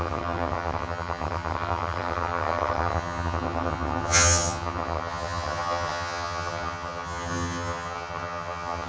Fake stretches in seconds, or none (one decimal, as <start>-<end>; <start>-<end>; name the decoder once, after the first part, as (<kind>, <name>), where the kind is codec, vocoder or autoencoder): 0.0-8.9 (vocoder, HiFi-GAN)